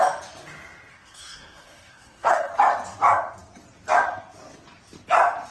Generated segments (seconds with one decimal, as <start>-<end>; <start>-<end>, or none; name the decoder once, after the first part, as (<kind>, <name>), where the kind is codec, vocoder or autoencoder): 0.9-2.5 (codec, SNAC)